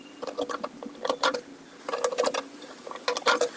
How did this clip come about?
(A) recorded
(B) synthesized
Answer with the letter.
A